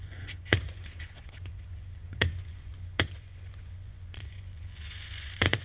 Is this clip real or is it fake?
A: fake